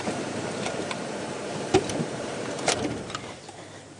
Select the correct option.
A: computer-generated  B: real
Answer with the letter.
A